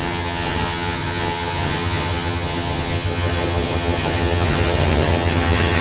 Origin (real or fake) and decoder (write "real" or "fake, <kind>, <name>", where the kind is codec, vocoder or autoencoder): fake, vocoder, HiFi-GAN